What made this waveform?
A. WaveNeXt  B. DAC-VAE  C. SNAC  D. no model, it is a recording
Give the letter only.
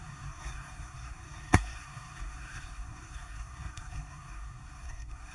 C